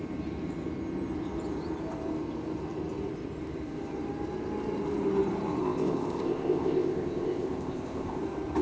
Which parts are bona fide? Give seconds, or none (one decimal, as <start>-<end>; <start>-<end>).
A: 0.0-5.6; 8.2-8.6